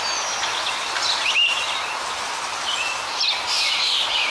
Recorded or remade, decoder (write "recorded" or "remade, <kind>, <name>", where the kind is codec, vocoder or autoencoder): recorded